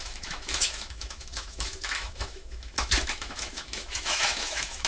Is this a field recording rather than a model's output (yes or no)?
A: no